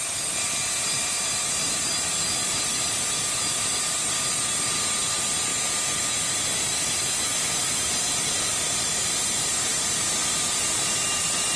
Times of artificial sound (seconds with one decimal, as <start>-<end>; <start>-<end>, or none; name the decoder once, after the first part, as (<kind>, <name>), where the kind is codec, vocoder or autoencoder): none

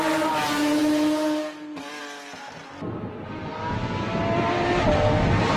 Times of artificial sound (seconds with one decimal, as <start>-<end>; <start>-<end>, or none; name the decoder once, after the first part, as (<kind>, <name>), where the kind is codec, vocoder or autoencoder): none

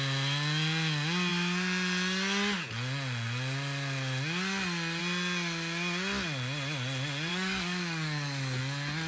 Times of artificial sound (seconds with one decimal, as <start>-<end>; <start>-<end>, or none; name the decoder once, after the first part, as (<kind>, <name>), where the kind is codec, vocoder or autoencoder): 7.3-8.6 (codec, DAC)

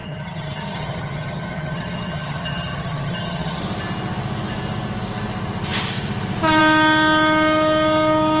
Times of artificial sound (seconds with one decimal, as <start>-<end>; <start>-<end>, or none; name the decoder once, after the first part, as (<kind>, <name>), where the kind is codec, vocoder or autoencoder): 0.0-3.6 (vocoder, HiFi-GAN)

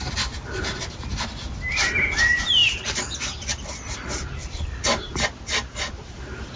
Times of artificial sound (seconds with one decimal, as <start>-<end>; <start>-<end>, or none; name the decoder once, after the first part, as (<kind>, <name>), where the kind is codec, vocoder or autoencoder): 2.6-6.6 (vocoder, BigVGAN v2)

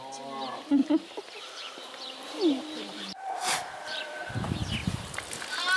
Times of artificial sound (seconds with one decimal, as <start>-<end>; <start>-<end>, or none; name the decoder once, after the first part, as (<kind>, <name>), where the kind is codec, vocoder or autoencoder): 0.8-4.3 (vocoder, BigVGAN v2); 4.8-5.3

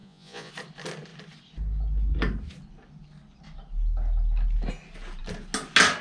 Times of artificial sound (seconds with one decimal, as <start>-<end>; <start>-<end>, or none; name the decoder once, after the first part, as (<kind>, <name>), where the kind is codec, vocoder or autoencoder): 0.0-0.5 (vocoder, Vocos)

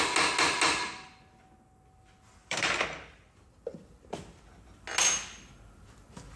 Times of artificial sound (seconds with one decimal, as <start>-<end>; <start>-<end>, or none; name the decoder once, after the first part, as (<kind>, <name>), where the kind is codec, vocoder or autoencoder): 2.4-3.4 (vocoder, BigVGAN v2)